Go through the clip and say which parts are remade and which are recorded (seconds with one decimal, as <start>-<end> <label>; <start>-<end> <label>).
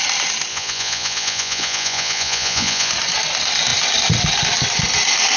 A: 0.0-0.5 recorded; 0.5-2.9 remade; 2.9-5.4 recorded